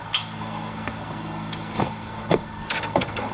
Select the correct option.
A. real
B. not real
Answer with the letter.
B